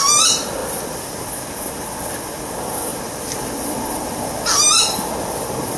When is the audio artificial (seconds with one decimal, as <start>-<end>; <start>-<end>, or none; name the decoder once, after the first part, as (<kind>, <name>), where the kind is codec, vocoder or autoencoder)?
0.6-1.2 (vocoder, BigVGAN v2); 2.9-5.8